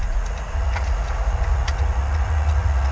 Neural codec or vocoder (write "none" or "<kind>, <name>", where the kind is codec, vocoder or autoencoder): vocoder, Vocos